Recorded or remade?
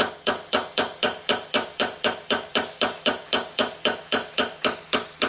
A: remade